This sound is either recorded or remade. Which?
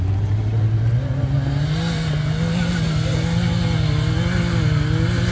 recorded